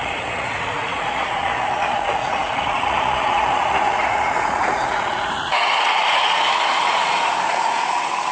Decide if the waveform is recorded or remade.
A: remade